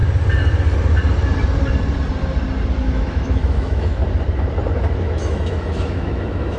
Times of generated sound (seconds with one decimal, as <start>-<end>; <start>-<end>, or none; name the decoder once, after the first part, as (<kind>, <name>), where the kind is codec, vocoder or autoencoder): 2.8-4.0 (autoencoder, DAC-VAE); 5.0-6.6